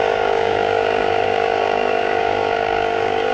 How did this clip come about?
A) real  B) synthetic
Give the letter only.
B